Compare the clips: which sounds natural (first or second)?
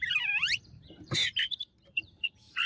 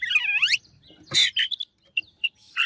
second